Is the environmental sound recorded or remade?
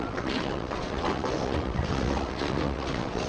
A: remade